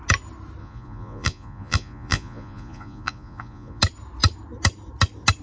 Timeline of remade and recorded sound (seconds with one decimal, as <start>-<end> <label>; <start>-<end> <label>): 0.0-0.6 recorded; 0.6-3.8 remade; 3.8-5.4 recorded